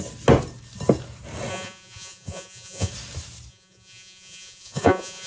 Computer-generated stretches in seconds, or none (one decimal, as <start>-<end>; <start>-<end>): 1.5-2.9; 3.5-5.3